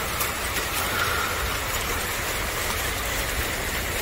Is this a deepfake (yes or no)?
yes